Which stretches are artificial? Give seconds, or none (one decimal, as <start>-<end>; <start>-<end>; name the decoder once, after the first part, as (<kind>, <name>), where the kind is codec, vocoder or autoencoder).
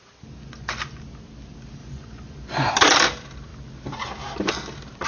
0.4-1.0 (vocoder, Vocos); 1.8-2.7